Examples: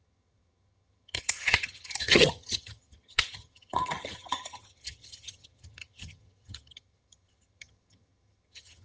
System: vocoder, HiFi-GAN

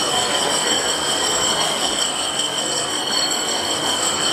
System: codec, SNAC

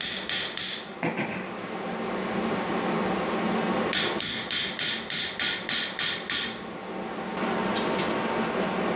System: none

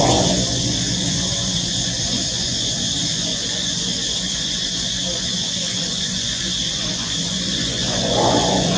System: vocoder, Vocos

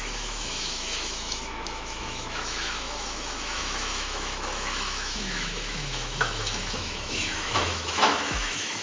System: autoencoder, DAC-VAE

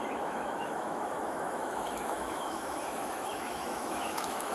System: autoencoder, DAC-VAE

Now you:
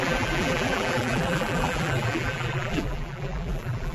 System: vocoder, BigVGAN v2